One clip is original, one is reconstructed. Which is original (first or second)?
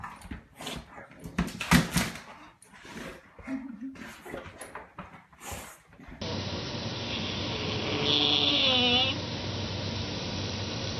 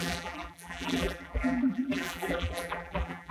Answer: first